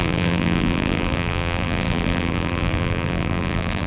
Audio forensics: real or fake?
fake